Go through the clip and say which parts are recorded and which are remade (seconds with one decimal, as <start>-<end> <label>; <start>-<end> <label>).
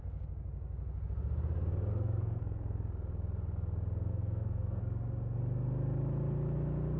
0.0-1.9 recorded; 1.9-2.4 remade; 2.4-4.1 recorded; 4.1-4.8 remade; 4.8-7.0 recorded